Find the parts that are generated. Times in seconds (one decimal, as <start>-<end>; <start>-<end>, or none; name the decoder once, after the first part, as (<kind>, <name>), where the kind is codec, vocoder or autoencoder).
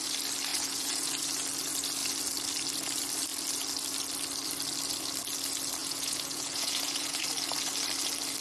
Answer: 0.5-1.1 (vocoder, Vocos); 5.8-7.2